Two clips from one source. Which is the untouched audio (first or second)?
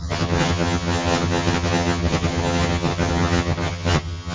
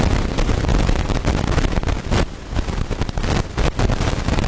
second